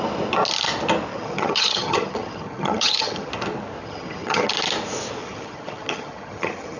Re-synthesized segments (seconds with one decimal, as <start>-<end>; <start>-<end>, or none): 1.1-3.3; 3.8-4.5; 5.2-6.8